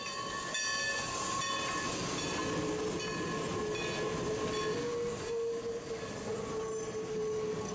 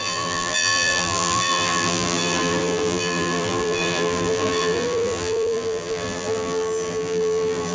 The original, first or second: first